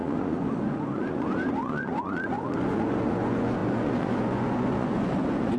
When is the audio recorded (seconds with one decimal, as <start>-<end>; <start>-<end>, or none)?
none